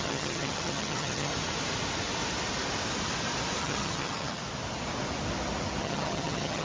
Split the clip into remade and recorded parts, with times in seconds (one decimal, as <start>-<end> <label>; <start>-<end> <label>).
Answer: 0.0-1.3 remade; 1.3-3.6 recorded; 3.6-4.4 remade; 4.4-5.8 recorded; 5.8-6.6 remade